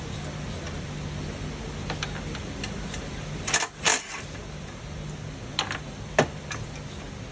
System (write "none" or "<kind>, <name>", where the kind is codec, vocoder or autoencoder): none